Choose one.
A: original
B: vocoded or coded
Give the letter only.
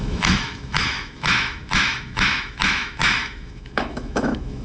B